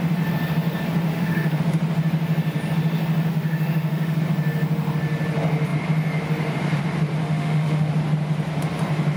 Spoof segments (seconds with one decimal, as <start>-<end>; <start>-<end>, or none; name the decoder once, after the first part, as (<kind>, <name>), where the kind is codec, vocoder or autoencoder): 1.1-1.6 (autoencoder, DAC-VAE); 3.3-4.2; 7.2-7.9